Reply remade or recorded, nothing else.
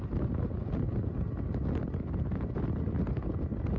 recorded